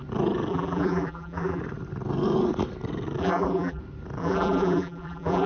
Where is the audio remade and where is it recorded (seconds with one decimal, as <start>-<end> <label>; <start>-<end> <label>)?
0.0-0.5 recorded; 0.5-1.6 remade; 1.6-3.2 recorded; 3.2-3.8 remade; 3.8-4.2 recorded; 4.2-5.5 remade